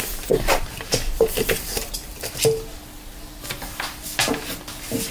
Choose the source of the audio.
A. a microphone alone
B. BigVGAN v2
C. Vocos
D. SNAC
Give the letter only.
A